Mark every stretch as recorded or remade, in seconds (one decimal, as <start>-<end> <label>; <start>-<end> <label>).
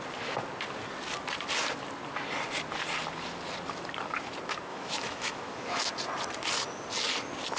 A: 0.0-4.7 recorded; 4.7-5.8 remade; 5.8-7.6 recorded